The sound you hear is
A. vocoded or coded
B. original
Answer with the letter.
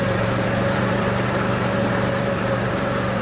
A